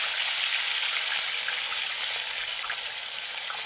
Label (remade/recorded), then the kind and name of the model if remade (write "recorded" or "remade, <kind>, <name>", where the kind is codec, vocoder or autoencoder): recorded